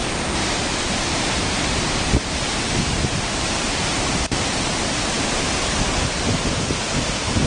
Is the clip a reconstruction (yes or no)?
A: yes